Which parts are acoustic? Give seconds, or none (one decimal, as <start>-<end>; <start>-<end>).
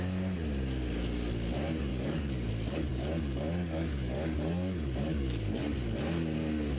0.0-1.9; 2.5-2.9; 5.6-6.8